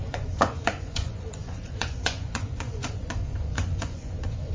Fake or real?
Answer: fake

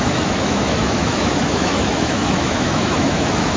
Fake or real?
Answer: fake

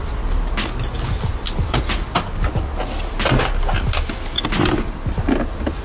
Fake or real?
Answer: real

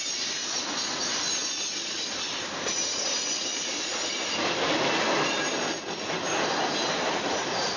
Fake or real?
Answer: fake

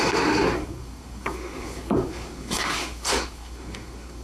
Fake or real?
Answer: fake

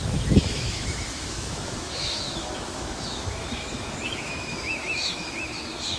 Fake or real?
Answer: fake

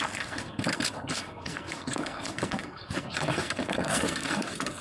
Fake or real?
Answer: fake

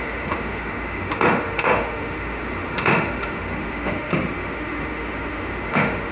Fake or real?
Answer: fake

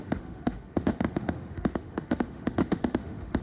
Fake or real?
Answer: fake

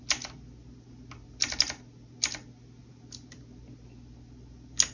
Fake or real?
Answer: real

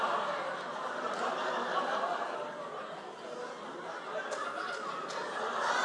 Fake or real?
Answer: real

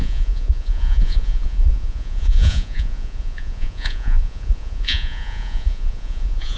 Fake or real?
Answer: fake